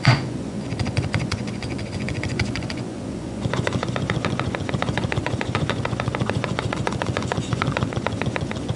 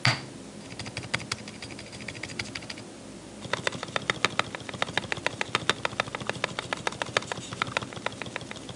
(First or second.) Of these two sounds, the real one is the second